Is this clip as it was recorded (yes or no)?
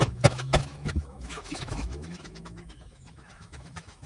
no